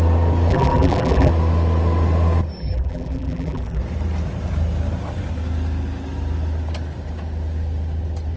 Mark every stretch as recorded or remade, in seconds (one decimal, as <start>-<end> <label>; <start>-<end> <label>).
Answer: 0.0-0.5 recorded; 0.5-1.3 remade; 1.3-2.6 recorded; 2.6-3.8 remade; 3.8-8.4 recorded